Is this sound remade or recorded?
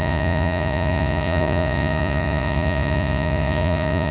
remade